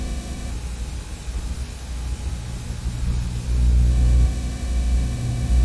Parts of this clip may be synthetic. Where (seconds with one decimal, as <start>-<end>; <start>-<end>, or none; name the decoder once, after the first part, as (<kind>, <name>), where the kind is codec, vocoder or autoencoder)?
0.0-0.5 (autoencoder, DAC-VAE); 3.9-5.6